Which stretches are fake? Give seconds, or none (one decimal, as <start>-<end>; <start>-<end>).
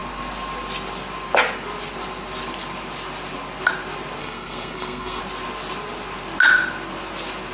4.2-5.2